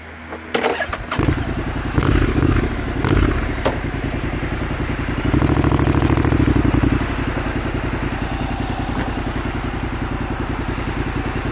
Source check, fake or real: real